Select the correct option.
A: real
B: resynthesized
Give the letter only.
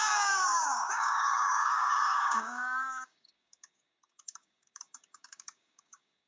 B